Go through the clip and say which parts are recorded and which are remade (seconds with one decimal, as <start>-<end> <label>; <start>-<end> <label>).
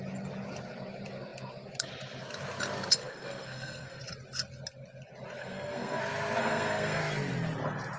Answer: 0.0-3.0 recorded; 3.0-4.0 remade; 4.0-5.4 recorded; 5.4-6.0 remade; 6.0-6.4 recorded; 6.4-7.0 remade; 7.0-8.0 recorded